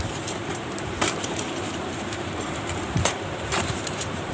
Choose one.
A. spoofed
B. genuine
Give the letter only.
A